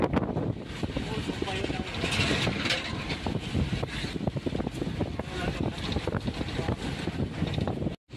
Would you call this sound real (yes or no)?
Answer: yes